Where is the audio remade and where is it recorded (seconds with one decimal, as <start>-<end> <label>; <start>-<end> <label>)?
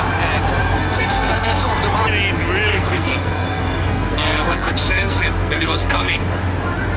0.0-0.6 recorded; 0.6-1.7 remade; 1.7-2.7 recorded; 2.7-6.2 remade; 6.2-7.0 recorded